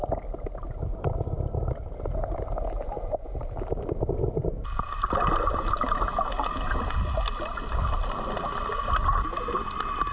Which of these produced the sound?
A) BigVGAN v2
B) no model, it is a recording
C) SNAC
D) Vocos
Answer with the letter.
B